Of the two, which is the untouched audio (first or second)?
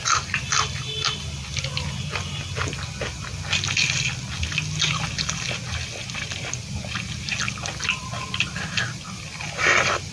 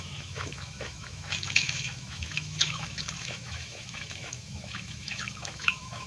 first